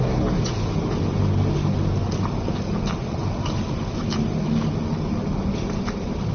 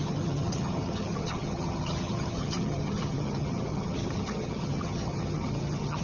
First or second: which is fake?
second